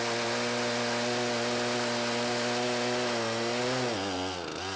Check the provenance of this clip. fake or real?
real